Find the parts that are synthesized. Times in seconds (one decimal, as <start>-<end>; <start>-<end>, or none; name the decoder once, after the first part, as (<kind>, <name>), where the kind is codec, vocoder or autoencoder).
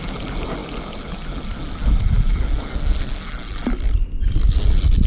2.7-3.2 (codec, SNAC)